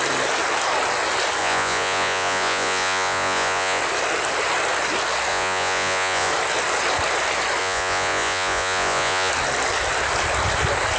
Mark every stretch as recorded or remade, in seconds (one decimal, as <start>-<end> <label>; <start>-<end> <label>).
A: 0.0-1.4 recorded; 1.4-3.8 remade; 3.8-5.3 recorded; 5.3-6.3 remade; 6.3-7.6 recorded; 7.6-9.3 remade; 9.3-11.0 recorded